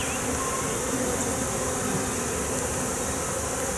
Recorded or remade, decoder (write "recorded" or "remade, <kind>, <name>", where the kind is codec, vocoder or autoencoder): recorded